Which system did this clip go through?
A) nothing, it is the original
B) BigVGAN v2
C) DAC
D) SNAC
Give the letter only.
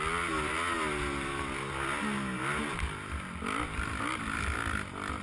A